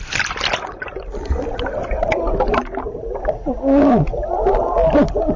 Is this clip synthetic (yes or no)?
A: no